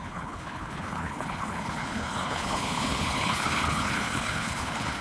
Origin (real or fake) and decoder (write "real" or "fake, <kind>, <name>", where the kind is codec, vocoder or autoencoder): fake, codec, HILCodec